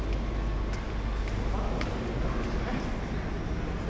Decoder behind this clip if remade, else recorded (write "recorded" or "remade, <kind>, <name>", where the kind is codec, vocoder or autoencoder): recorded